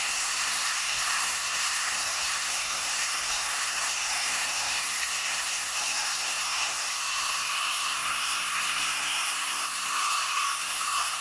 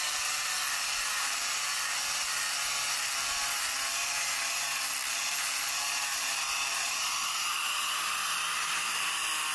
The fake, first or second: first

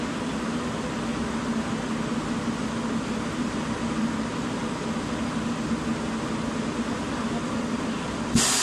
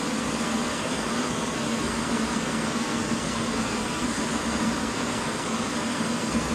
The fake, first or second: second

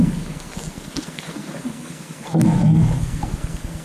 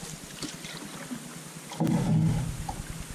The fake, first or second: first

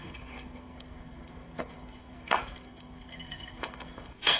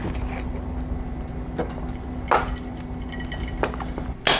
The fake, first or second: first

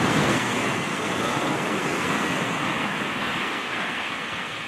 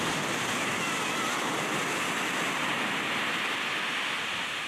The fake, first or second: first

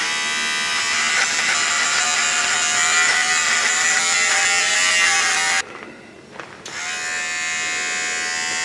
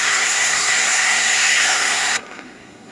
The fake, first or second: second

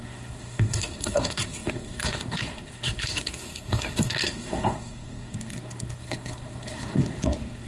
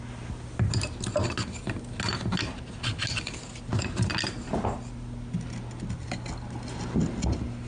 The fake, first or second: first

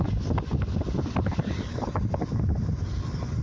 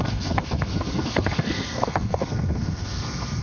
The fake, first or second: second